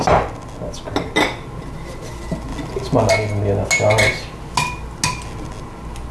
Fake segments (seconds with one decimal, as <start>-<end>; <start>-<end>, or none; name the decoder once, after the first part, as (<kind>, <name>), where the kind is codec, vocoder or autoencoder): none